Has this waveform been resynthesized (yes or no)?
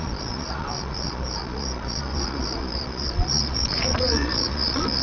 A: yes